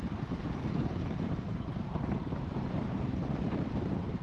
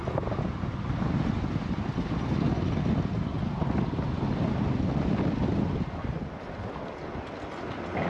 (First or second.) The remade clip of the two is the first